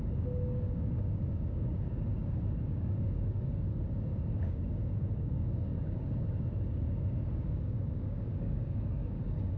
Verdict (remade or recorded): remade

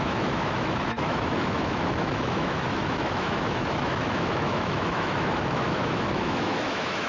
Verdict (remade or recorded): remade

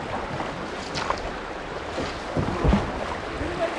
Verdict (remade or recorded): recorded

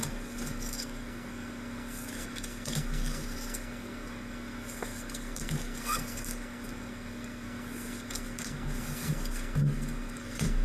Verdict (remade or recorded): remade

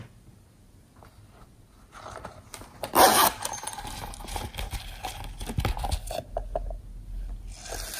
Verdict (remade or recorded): recorded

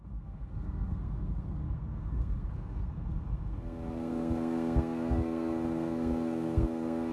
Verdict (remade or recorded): remade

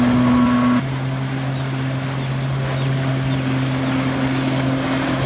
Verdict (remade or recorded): recorded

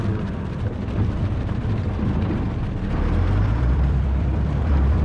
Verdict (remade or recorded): remade